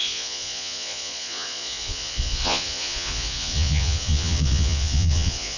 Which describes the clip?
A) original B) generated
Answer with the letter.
B